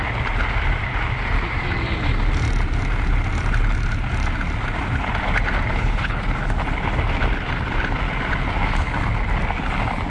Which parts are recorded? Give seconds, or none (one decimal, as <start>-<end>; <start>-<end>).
0.0-5.7; 6.2-10.1